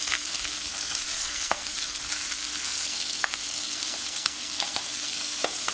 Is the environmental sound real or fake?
fake